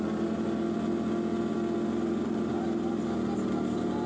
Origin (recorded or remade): recorded